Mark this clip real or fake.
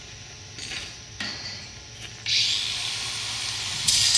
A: real